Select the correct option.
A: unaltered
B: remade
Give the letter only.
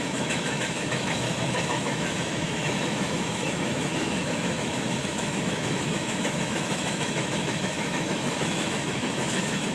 B